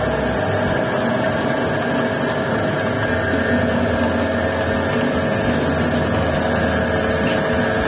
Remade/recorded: recorded